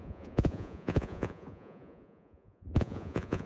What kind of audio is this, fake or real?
fake